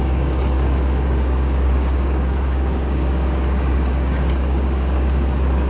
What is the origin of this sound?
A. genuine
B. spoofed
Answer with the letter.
B